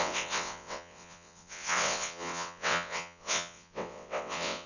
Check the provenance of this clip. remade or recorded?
remade